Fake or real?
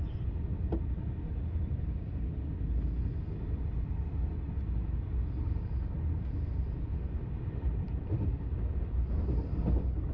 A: real